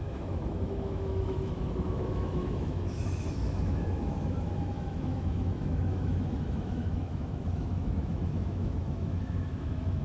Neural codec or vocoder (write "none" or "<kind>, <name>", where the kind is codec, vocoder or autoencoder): autoencoder, DAC-VAE